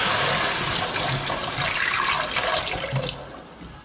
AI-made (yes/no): no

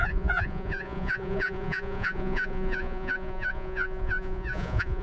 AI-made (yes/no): yes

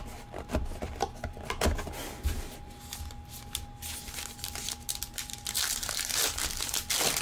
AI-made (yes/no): yes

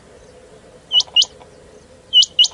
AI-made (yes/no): no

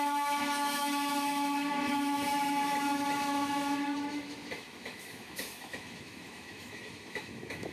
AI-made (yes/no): yes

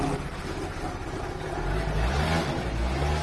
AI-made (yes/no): no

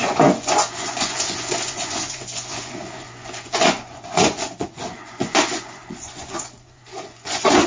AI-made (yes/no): yes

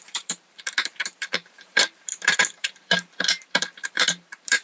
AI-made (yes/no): yes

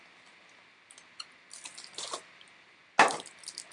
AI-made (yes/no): no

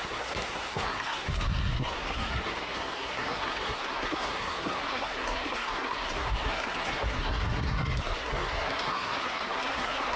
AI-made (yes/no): yes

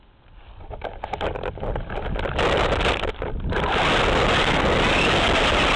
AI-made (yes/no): no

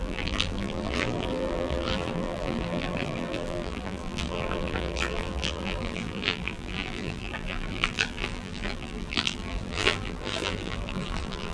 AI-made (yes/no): yes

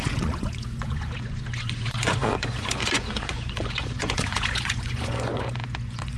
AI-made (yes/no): yes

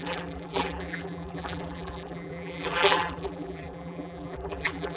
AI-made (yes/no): yes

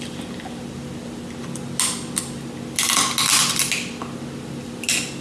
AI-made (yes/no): no